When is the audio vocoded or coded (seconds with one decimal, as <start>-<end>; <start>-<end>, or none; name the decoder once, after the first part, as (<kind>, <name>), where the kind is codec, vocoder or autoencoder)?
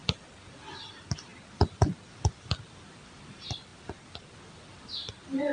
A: none